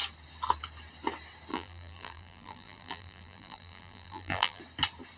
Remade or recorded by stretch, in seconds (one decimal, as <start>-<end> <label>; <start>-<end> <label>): 0.0-1.5 recorded; 1.5-4.6 remade; 4.6-5.2 recorded